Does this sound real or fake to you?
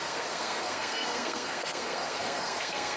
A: fake